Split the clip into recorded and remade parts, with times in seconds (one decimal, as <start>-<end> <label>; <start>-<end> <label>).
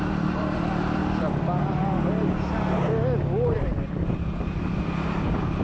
0.0-1.0 remade; 1.0-4.4 recorded; 4.4-5.6 remade